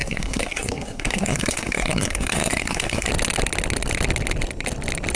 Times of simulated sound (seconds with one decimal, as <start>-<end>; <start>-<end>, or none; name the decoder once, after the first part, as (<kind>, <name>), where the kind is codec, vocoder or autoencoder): 0.0-3.1 (codec, SNAC)

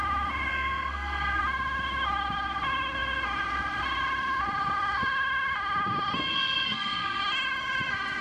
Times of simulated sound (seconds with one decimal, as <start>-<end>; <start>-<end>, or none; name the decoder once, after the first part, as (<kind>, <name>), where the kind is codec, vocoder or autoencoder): 0.5-1.4 (codec, SNAC); 6.2-7.2

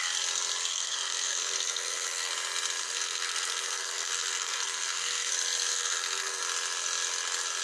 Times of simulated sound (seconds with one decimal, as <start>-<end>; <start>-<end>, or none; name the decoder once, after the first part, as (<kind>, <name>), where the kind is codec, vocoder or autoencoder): 0.7-2.3 (codec, SNAC); 2.8-5.3; 5.7-6.4

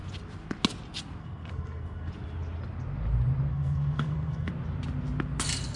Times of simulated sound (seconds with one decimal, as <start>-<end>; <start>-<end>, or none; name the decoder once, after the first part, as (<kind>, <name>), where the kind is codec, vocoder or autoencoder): 1.2-2.1 (codec, SNAC); 3.5-4.5

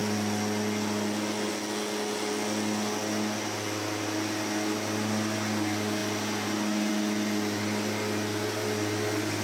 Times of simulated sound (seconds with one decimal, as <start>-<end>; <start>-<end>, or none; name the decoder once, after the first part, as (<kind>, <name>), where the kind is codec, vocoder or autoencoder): none